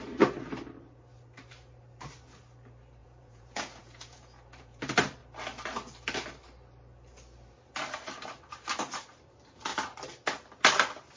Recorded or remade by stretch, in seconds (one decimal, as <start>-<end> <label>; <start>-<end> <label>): 0.0-3.0 recorded; 3.0-4.8 remade; 4.8-11.2 recorded